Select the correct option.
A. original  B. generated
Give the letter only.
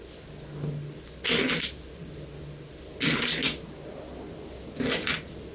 A